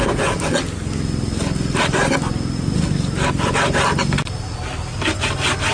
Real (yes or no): yes